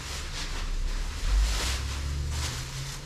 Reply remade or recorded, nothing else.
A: recorded